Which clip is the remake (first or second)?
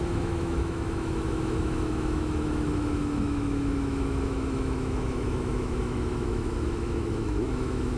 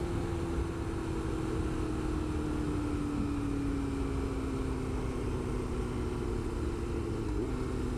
first